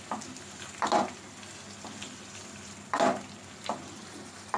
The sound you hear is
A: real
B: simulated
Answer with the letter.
A